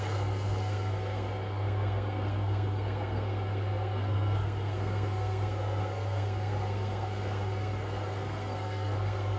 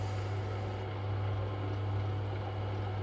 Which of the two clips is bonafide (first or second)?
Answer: second